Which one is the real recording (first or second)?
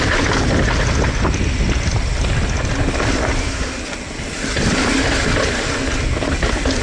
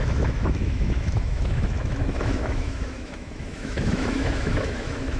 first